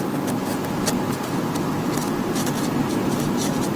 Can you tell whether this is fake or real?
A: real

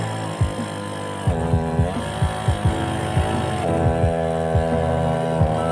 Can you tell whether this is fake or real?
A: real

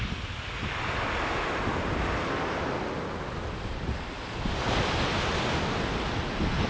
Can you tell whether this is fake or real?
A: real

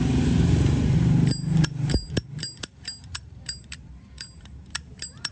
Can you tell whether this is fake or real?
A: fake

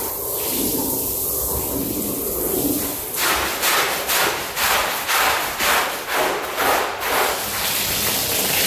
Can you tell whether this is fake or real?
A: fake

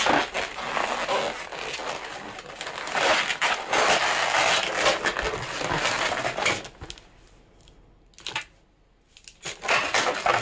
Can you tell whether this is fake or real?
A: real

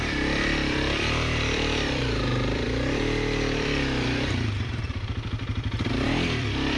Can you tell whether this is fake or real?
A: fake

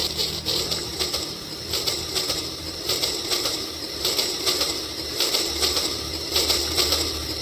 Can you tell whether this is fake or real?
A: fake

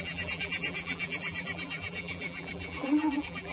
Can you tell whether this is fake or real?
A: fake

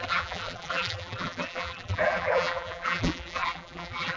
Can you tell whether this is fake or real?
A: fake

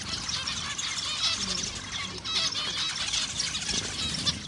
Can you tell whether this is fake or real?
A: real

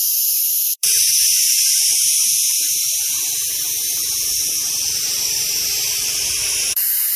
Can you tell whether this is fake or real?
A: fake